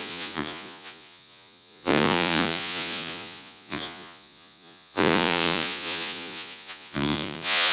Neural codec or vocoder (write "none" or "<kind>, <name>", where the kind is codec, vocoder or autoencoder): vocoder, Vocos